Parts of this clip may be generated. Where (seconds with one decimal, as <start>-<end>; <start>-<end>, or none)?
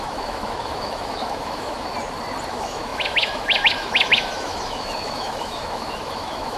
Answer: 0.0-1.9; 2.5-6.6